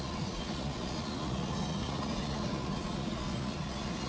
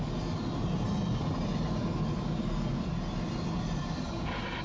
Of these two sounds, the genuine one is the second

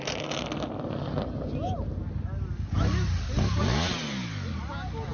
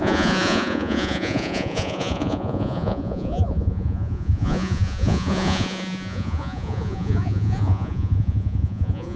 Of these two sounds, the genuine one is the first